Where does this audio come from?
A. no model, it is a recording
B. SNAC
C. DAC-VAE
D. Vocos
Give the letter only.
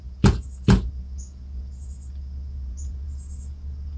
D